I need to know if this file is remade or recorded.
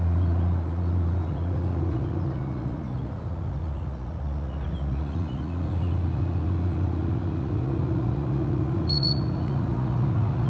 remade